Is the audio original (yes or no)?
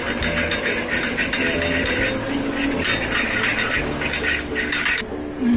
yes